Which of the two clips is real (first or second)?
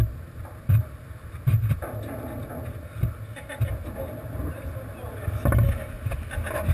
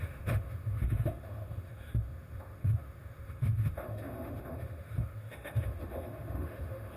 first